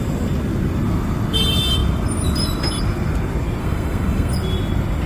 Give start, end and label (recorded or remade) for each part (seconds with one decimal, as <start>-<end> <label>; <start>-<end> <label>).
0.0-3.6 recorded; 3.6-4.3 remade; 4.3-5.1 recorded